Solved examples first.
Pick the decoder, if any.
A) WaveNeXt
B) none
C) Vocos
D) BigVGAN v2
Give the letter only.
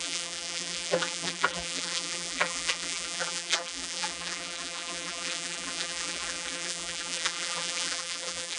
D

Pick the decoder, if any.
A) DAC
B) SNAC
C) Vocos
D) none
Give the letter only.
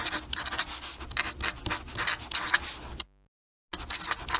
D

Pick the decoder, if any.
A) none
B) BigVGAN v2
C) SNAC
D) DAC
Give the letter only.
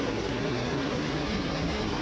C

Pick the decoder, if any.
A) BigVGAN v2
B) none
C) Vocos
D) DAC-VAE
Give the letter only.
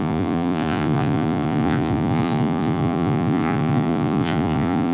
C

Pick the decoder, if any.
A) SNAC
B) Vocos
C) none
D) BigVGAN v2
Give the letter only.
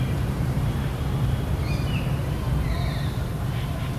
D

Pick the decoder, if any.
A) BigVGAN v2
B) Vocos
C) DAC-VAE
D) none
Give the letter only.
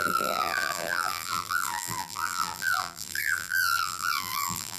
A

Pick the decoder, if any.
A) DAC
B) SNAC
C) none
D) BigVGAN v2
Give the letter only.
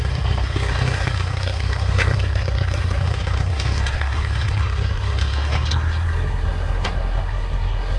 B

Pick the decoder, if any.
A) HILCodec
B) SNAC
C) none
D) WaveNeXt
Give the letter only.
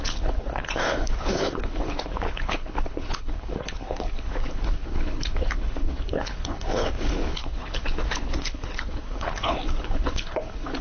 A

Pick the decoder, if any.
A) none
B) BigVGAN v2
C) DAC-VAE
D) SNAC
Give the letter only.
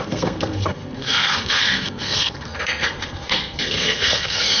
D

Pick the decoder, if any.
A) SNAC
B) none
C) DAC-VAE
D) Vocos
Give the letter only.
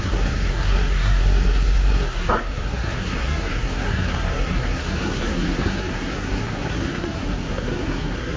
A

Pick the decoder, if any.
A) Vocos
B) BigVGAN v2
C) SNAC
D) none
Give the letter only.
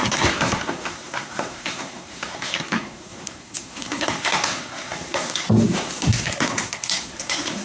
C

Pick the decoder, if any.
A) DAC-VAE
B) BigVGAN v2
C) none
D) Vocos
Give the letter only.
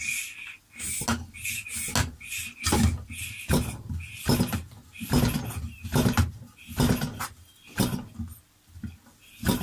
C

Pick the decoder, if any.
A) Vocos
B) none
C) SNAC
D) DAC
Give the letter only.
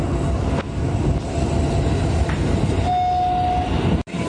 B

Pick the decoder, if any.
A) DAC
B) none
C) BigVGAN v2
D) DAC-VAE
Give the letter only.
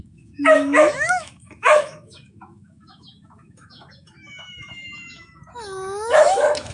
D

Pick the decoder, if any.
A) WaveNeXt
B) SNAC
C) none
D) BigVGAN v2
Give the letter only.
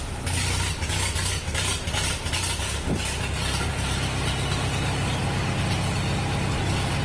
C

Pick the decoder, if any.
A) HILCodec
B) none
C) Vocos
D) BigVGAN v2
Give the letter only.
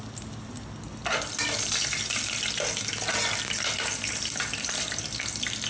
B